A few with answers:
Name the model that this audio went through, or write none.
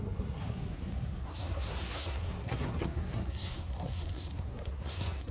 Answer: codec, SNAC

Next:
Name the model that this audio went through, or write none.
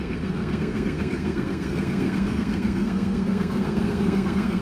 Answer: codec, SNAC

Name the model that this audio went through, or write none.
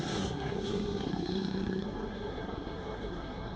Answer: codec, SNAC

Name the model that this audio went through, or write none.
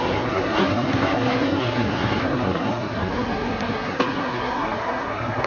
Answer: codec, SNAC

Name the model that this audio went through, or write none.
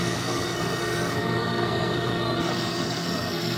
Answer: codec, SNAC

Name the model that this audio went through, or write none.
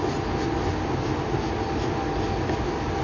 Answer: none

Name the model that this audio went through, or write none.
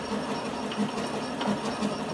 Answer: none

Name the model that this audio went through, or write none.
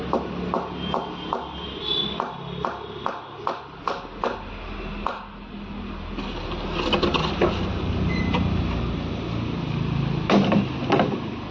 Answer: none